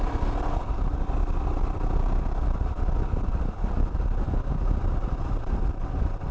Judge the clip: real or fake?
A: real